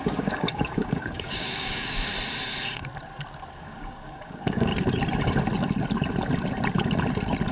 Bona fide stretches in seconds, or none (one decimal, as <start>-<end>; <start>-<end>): 2.1-3.6; 4.7-7.5

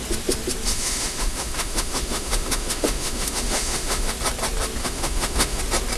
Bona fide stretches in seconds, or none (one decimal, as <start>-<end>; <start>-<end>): 0.0-0.7; 4.1-4.8; 5.6-6.0